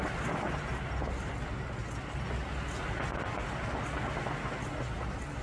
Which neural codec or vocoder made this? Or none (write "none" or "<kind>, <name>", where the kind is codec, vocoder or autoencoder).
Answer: none